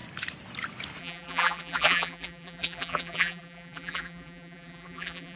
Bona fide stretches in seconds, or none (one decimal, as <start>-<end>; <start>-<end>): 0.0-1.0